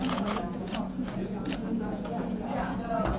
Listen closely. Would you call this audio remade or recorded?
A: remade